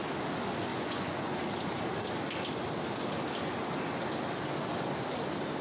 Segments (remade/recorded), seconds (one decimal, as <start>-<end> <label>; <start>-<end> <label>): 0.0-0.7 recorded; 0.7-1.4 remade; 1.4-5.6 recorded